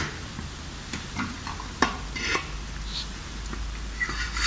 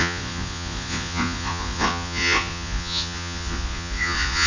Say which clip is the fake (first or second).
second